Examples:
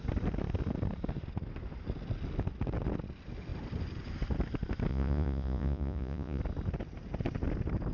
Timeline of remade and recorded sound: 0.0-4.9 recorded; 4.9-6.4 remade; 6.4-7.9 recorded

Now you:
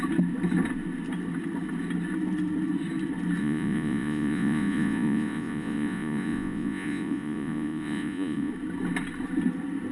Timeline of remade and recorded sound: 0.0-3.4 recorded; 3.4-8.5 remade; 8.5-9.9 recorded

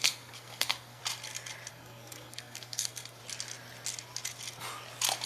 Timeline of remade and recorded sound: 0.0-1.0 remade; 1.0-1.7 recorded; 1.7-3.2 remade; 3.2-5.3 recorded

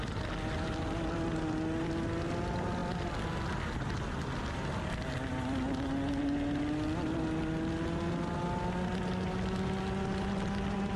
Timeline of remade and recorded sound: 0.0-11.0 recorded